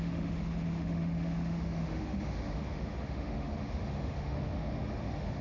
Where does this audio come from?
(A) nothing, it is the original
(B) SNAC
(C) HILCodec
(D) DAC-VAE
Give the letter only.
D